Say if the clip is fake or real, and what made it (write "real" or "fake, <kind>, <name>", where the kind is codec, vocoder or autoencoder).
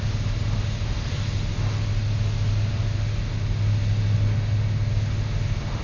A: real